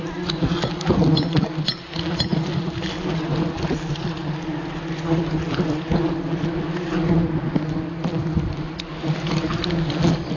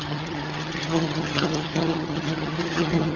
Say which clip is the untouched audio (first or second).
first